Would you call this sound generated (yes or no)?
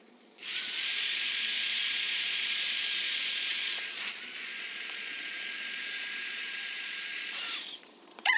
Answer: yes